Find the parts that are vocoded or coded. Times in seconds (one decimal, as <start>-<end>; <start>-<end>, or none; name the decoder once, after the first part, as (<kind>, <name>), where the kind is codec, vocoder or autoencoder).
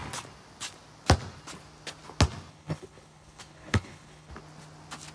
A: 2.5-4.3 (codec, HILCodec)